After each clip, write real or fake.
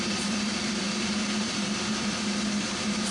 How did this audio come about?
fake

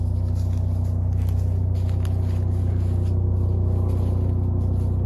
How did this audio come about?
real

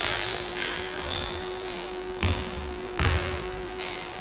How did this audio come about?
fake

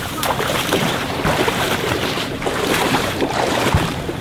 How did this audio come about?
fake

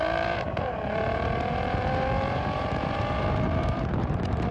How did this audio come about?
fake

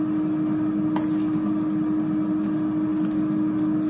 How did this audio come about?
real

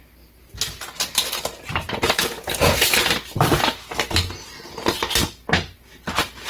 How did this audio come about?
real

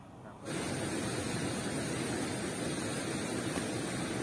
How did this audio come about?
real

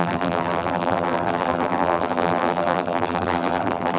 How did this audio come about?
fake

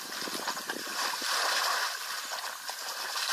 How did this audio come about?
real